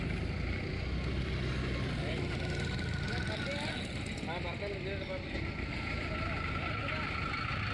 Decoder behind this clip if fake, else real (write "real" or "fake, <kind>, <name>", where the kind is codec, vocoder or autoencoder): real